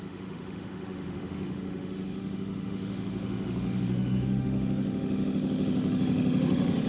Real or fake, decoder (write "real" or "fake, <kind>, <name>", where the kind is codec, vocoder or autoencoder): fake, autoencoder, DAC-VAE